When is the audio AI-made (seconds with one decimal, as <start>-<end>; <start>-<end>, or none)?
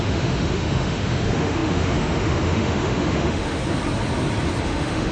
0.0-3.6; 4.6-5.1